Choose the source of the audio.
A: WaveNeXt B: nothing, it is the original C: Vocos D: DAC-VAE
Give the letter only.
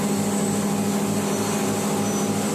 B